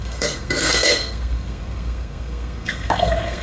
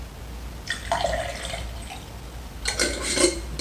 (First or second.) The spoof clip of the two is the first